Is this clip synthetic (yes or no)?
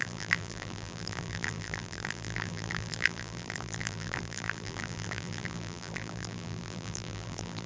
yes